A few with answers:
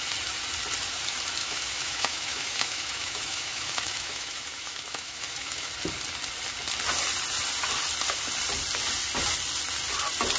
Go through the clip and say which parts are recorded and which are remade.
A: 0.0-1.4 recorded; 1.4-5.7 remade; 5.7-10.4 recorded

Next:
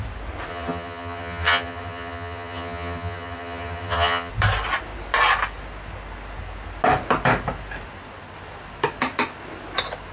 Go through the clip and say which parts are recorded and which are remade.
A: 0.0-0.5 recorded; 0.5-4.3 remade; 4.3-10.1 recorded

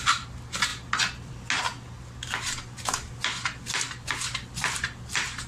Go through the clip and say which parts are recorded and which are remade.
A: 0.0-5.5 recorded

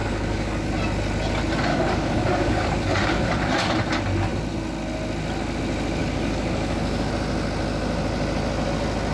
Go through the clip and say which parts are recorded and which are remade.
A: 0.0-0.7 remade; 0.7-1.7 recorded; 1.7-3.3 remade; 3.3-6.0 recorded; 6.0-7.1 remade; 7.1-9.1 recorded